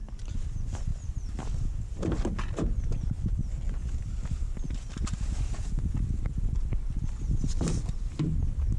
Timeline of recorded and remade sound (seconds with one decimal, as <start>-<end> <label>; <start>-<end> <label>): 0.0-8.8 recorded